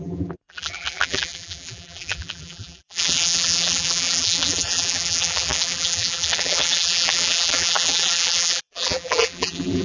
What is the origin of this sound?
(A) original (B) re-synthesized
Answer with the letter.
B